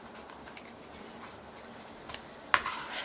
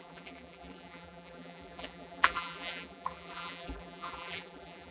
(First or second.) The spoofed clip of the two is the second